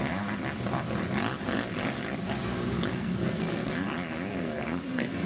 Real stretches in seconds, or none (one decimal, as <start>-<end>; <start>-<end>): 0.0-2.9; 3.7-4.3